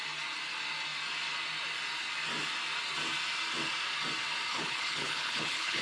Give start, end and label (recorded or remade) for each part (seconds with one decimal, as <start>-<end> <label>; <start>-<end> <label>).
0.0-4.5 recorded; 4.5-5.8 remade